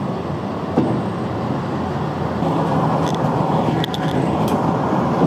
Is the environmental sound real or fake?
real